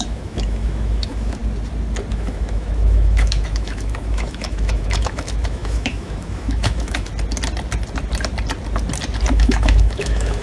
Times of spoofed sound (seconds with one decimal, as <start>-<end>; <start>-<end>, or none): 0.0-1.4; 2.1-7.1; 9.3-10.4